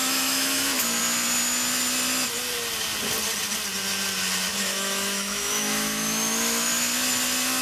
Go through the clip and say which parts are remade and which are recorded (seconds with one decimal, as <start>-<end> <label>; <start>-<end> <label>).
0.0-1.0 remade; 1.0-4.5 recorded; 4.5-6.7 remade; 6.7-7.6 recorded